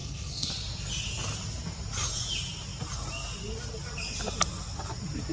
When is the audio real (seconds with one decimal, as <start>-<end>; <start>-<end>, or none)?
0.5-5.3